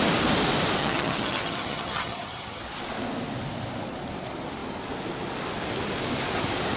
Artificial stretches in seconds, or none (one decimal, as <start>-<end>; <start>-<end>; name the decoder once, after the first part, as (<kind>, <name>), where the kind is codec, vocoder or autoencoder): 0.8-2.6 (vocoder, HiFi-GAN)